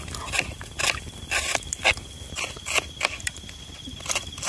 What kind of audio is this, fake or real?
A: real